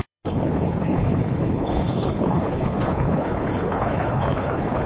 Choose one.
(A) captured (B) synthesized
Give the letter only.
B